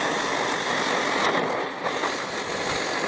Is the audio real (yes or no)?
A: yes